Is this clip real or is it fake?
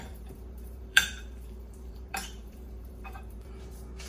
fake